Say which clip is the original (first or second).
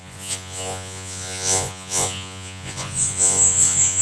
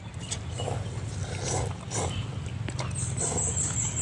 second